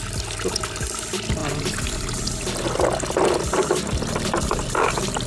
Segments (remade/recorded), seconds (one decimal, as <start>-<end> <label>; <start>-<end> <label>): 0.0-5.3 recorded